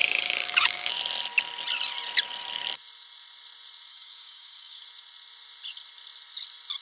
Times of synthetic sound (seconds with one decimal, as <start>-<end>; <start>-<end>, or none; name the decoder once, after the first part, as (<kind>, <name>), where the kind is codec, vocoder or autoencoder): 0.0-1.0 (codec, DAC); 3.9-4.8